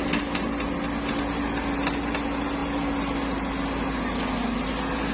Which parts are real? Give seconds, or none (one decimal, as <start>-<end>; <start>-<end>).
0.0-5.1